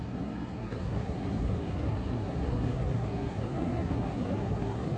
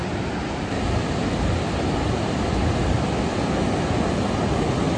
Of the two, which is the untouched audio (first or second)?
second